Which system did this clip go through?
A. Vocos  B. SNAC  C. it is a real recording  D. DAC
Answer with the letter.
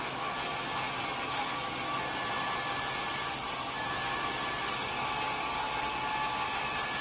C